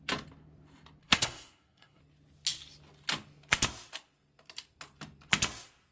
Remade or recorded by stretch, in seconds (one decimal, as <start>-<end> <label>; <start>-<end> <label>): 0.0-1.0 recorded; 1.0-2.0 remade; 2.0-5.9 recorded